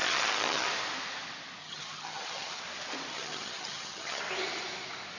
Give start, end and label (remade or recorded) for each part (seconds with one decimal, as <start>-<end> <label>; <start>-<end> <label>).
0.0-0.7 remade; 0.7-1.6 recorded; 1.6-2.6 remade; 2.6-3.1 recorded; 3.1-4.2 remade; 4.2-5.2 recorded